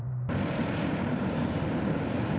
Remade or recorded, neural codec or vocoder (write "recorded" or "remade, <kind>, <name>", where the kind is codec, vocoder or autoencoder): remade, vocoder, BigVGAN v2